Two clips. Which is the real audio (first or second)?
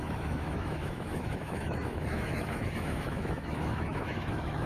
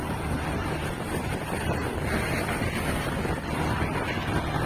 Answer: second